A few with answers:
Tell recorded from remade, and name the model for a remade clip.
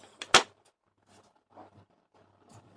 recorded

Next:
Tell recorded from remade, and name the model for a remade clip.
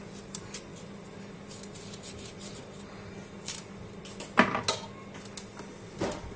recorded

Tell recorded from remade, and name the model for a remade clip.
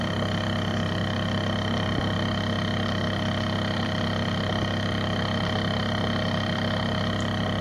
recorded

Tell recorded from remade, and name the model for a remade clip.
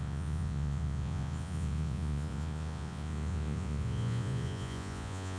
remade, vocoder, Vocos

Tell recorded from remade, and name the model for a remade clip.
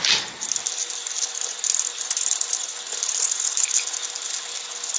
recorded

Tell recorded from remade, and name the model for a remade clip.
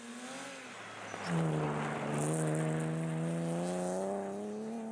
recorded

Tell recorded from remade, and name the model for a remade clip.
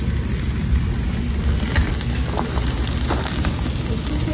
recorded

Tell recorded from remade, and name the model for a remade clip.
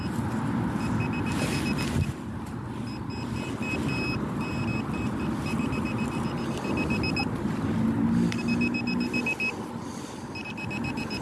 recorded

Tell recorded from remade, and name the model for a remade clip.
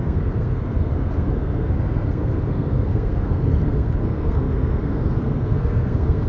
remade, codec, SNAC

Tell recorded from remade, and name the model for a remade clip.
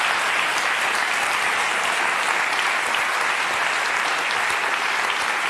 recorded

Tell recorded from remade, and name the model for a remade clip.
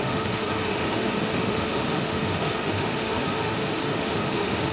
remade, autoencoder, DAC-VAE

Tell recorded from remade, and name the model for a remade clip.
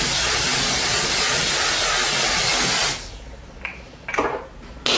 recorded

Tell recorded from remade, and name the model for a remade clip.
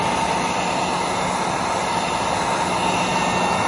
recorded